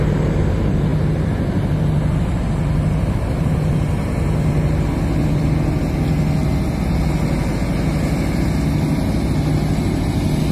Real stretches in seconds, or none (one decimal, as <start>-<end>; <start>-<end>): 0.0-10.5